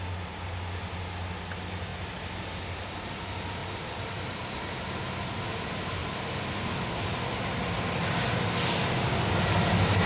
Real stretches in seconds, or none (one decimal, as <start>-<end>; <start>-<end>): 0.0-1.9; 2.5-3.6; 4.5-6.0; 7.8-10.1